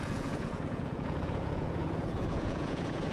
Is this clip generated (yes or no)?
yes